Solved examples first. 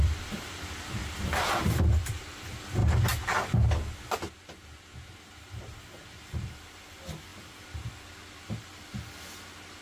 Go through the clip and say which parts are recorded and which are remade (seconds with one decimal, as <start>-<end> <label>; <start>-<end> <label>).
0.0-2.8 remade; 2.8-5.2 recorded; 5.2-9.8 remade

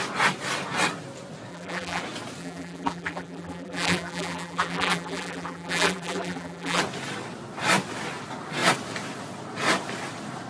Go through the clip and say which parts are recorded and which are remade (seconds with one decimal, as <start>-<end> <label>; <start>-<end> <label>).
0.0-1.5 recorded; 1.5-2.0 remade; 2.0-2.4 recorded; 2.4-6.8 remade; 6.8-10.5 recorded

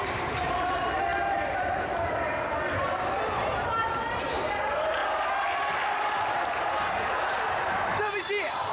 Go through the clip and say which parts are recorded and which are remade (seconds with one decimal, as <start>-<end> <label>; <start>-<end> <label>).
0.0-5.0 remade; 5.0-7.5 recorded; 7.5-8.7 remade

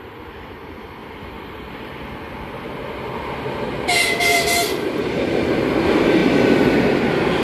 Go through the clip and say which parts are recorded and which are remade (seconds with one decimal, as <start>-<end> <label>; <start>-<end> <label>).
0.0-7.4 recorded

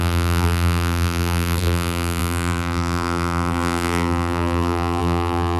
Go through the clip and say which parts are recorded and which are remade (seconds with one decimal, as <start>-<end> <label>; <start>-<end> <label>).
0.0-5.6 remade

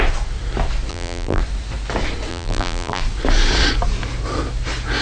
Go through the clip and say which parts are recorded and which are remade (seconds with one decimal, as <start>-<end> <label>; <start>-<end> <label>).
0.0-0.9 recorded; 0.9-1.4 remade; 1.4-2.3 recorded; 2.3-3.0 remade; 3.0-5.0 recorded